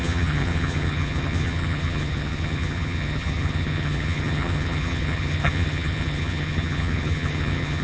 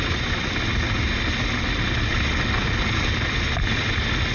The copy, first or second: first